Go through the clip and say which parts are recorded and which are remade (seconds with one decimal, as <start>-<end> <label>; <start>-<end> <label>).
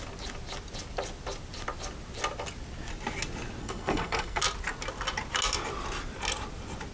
0.0-3.6 recorded; 3.6-4.4 remade; 4.4-6.9 recorded